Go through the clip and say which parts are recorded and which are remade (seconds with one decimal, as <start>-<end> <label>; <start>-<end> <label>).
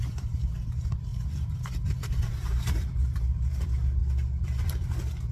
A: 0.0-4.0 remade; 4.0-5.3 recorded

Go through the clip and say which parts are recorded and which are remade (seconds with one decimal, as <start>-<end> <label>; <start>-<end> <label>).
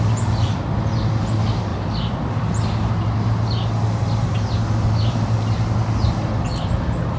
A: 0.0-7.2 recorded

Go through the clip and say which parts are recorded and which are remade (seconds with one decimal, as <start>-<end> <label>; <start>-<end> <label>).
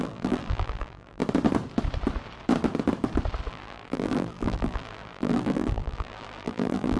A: 0.0-1.2 remade; 1.2-3.5 recorded; 3.5-7.0 remade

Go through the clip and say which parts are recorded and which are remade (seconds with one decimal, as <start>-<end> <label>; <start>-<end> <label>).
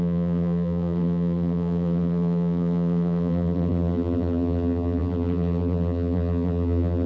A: 0.0-7.1 remade